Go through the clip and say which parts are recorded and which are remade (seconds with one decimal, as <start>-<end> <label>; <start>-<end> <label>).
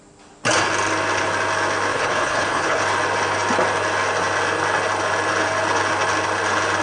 0.0-1.9 recorded; 1.9-2.8 remade; 2.8-6.8 recorded